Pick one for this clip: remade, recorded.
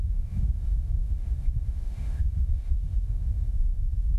remade